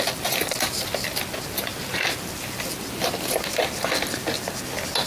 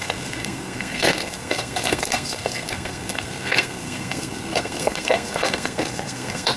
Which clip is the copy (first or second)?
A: second